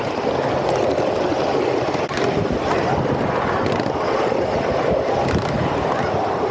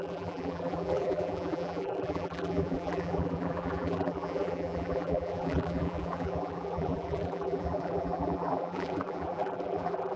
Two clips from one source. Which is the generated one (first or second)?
second